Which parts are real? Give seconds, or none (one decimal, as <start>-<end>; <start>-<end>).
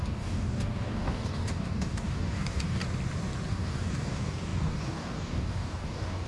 2.8-3.5